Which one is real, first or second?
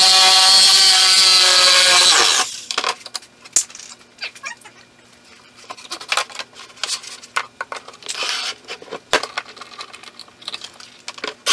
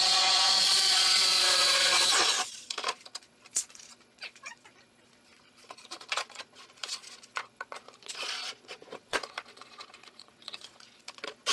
first